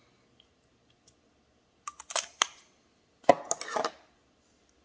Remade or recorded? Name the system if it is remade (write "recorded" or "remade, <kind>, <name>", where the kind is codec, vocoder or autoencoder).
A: recorded